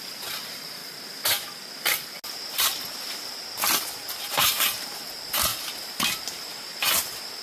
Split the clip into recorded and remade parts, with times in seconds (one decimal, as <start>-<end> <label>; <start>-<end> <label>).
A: 0.0-0.8 remade; 0.8-4.2 recorded; 4.2-7.4 remade